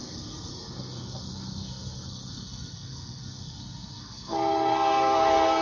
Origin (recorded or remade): remade